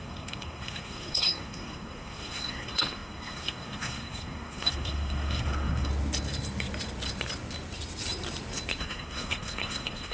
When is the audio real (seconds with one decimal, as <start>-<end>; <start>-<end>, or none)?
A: 5.9-8.8